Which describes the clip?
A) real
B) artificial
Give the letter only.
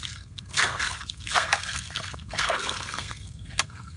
B